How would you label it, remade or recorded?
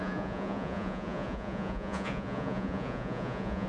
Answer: remade